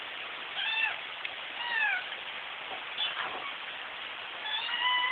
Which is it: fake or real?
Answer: real